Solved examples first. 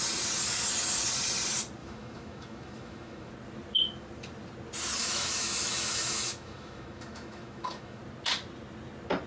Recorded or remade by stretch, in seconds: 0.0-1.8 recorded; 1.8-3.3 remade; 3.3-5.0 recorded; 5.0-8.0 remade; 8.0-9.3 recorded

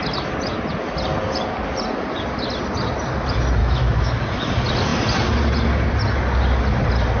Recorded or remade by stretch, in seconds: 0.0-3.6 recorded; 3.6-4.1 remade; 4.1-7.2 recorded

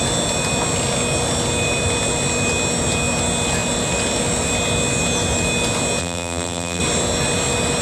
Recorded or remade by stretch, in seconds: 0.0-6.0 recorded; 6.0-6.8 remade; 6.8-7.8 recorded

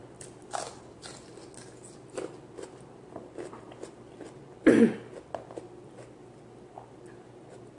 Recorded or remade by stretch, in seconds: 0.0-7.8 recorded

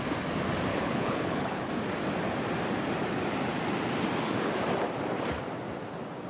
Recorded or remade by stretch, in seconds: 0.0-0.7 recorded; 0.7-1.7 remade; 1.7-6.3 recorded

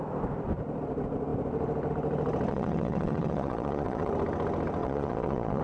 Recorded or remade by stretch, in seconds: 0.0-2.5 recorded; 2.5-4.1 remade; 4.1-4.8 recorded; 4.8-5.6 remade

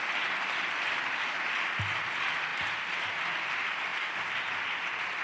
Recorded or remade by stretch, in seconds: 0.0-5.2 recorded

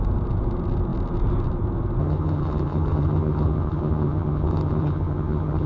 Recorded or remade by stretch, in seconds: 0.0-2.0 recorded; 2.0-5.7 remade